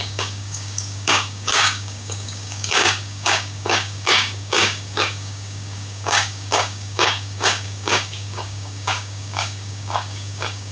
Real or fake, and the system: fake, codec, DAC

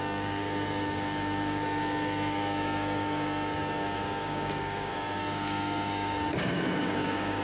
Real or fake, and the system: fake, codec, DAC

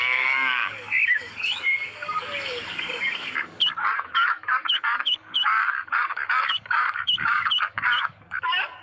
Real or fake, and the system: fake, codec, DAC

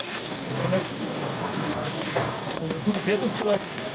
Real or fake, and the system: fake, codec, DAC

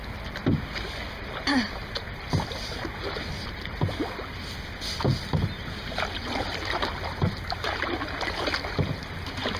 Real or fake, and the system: real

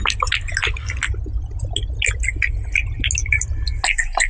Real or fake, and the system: real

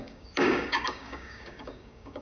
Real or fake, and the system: fake, codec, DAC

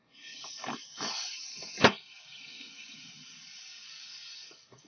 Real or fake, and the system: fake, codec, DAC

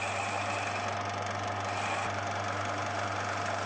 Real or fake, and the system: real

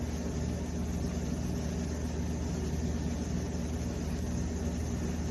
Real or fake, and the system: real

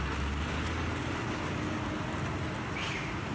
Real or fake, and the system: real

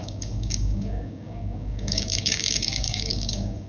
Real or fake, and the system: fake, codec, DAC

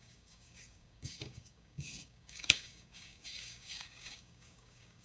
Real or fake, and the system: fake, codec, DAC